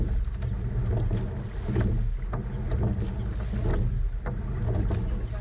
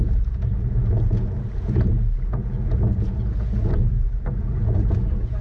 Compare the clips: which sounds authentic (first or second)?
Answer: first